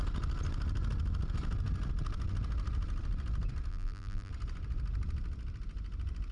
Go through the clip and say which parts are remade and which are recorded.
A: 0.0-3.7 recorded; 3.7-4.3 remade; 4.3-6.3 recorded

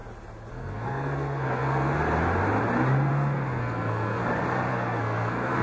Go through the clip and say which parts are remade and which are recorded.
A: 0.0-0.5 recorded; 0.5-2.0 remade; 2.0-3.1 recorded; 3.1-4.2 remade; 4.2-4.7 recorded; 4.7-5.6 remade

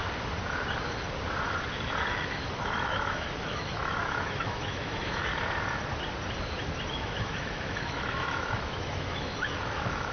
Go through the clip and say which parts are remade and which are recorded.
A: 0.0-2.1 recorded; 2.1-5.3 remade; 5.3-6.9 recorded; 6.9-10.1 remade